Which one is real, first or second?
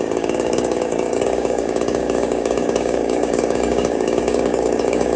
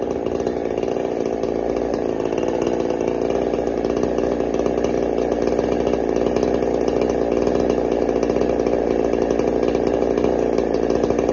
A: second